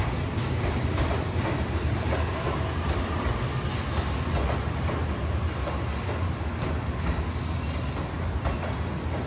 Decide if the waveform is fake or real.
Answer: real